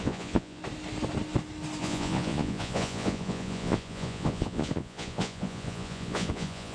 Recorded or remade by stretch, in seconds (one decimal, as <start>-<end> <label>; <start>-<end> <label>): 0.0-0.6 remade; 0.6-1.8 recorded; 1.8-6.7 remade